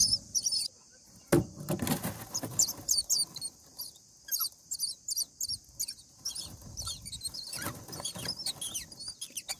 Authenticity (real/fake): real